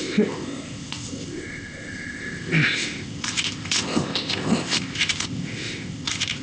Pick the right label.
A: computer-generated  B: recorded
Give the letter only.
A